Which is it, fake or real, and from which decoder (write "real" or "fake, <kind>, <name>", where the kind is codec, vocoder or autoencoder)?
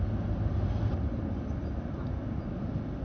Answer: real